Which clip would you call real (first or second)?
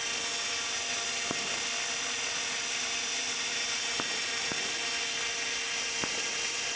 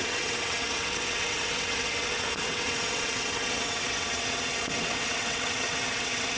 first